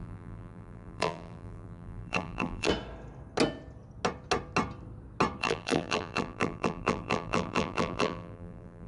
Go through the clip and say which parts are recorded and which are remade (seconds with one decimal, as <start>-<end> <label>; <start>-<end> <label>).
0.0-2.7 remade; 2.7-5.4 recorded; 5.4-8.9 remade

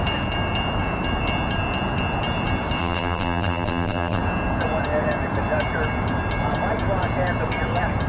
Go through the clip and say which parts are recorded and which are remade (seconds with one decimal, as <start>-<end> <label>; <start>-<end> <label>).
0.0-2.8 recorded; 2.8-4.2 remade; 4.2-8.1 recorded

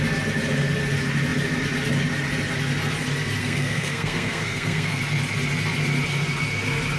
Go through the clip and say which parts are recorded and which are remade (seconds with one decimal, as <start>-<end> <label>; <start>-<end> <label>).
0.0-3.4 recorded; 3.4-5.0 remade; 5.0-7.0 recorded

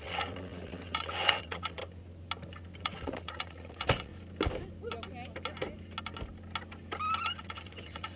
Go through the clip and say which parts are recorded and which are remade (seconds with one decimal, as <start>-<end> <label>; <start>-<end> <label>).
0.0-1.8 remade; 1.8-2.8 recorded; 2.8-4.1 remade; 4.1-7.4 recorded; 7.4-8.2 remade

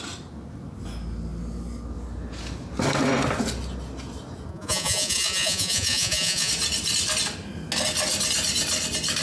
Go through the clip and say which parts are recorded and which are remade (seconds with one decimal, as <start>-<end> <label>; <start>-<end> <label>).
0.0-4.5 recorded; 4.5-6.5 remade; 6.5-9.2 recorded

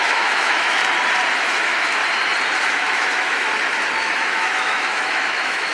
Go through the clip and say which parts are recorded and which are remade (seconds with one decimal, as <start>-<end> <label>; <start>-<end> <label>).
0.0-0.8 remade; 0.8-1.3 recorded; 1.3-2.0 remade; 2.0-2.6 recorded; 2.6-3.5 remade; 3.5-4.0 recorded; 4.0-5.7 remade

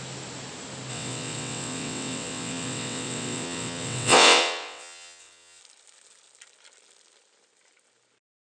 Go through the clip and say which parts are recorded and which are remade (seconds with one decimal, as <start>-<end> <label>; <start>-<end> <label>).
0.0-0.9 recorded; 0.9-5.6 remade; 5.6-8.5 recorded